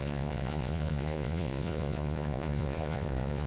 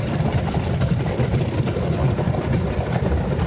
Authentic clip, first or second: second